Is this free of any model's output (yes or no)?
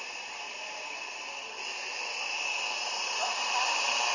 yes